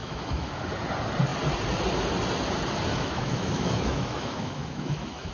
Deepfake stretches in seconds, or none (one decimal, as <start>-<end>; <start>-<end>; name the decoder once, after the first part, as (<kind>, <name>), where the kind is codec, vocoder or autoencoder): 0.0-0.6 (autoencoder, DAC-VAE); 2.9-5.3